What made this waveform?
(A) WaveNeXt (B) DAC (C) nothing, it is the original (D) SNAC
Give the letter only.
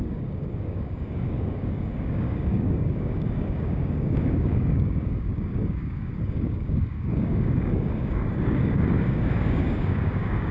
B